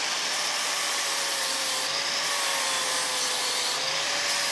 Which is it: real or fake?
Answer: fake